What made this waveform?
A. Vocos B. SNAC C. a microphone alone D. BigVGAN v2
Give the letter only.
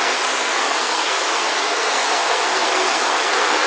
B